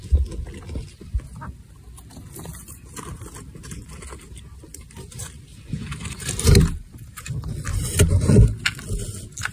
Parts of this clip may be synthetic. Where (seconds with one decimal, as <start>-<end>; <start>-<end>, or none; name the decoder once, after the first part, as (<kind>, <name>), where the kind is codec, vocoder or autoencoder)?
5.2-7.3 (vocoder, BigVGAN v2); 7.7-8.3